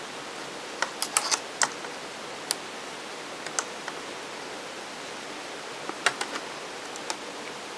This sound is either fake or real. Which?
real